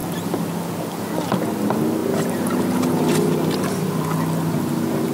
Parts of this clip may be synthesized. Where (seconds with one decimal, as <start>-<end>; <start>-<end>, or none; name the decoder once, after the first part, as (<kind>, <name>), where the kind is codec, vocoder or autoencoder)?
none